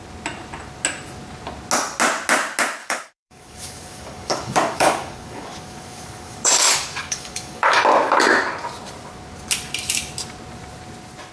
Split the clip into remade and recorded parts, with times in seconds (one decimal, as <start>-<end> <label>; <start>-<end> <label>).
0.0-2.8 recorded; 2.8-7.8 remade; 7.8-11.3 recorded